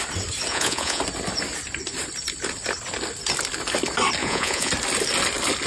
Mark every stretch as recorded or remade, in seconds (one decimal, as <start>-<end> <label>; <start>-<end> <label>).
0.0-0.5 recorded; 0.5-1.0 remade; 1.0-4.2 recorded; 4.2-4.7 remade; 4.7-5.7 recorded